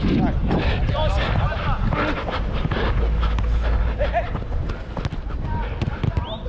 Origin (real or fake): real